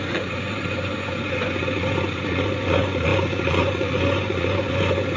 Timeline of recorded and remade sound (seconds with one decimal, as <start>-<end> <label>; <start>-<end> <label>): 0.0-5.2 remade